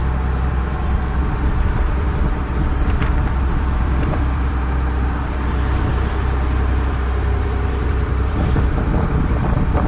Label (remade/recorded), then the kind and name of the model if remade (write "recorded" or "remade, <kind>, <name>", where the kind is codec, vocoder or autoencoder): remade, vocoder, BigVGAN v2